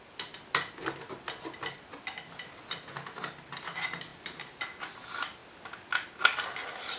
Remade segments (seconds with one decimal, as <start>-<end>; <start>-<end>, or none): none